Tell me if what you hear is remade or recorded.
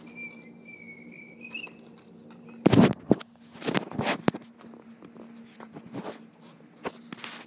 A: recorded